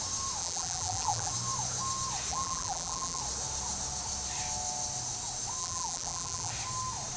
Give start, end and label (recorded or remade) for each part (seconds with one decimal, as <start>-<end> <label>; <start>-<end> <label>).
0.0-0.4 recorded; 0.4-1.3 remade; 1.3-2.3 recorded; 2.3-3.2 remade; 3.2-5.6 recorded; 5.6-6.5 remade; 6.5-7.2 recorded